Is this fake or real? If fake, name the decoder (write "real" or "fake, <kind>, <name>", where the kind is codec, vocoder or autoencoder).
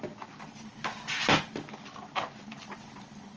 real